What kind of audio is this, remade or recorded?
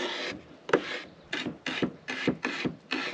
recorded